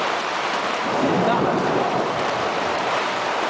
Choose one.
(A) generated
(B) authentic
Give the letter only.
A